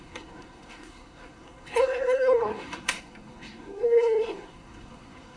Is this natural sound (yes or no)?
no